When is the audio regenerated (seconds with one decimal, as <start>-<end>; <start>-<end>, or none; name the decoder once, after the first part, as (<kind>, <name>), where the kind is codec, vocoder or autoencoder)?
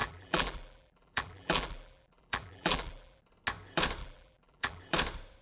0.0-3.2 (vocoder, BigVGAN v2); 4.0-4.8